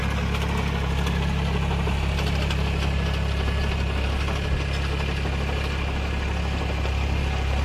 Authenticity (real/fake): real